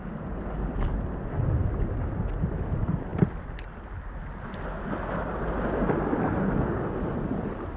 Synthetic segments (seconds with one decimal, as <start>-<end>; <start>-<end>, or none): none